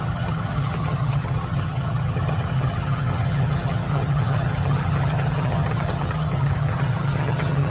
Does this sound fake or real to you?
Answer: fake